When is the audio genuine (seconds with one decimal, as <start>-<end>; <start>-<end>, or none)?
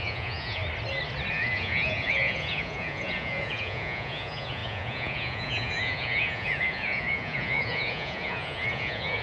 0.6-1.3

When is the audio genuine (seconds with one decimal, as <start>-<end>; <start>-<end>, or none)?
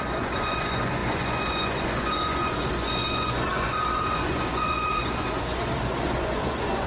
none